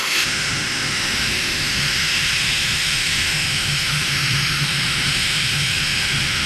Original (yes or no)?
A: no